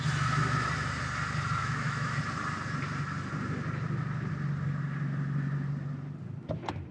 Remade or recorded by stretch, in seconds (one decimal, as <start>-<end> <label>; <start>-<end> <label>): 0.0-1.6 recorded; 1.6-2.2 remade; 2.2-6.9 recorded